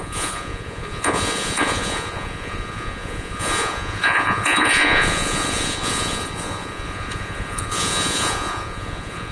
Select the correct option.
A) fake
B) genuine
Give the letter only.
A